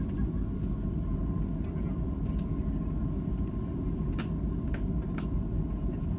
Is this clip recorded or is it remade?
recorded